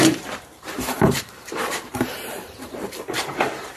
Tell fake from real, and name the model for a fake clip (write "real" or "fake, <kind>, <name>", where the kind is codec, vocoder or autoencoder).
fake, vocoder, BigVGAN v2